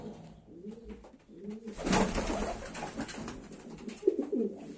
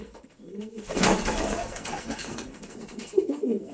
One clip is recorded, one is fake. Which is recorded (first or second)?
first